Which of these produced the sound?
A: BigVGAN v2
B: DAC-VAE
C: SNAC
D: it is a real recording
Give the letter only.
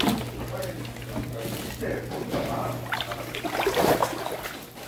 D